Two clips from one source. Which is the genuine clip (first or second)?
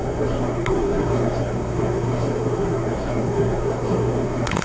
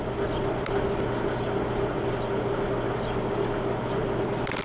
second